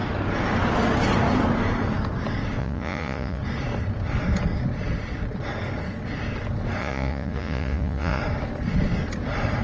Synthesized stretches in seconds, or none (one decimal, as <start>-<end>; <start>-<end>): 2.6-3.4; 6.8-8.2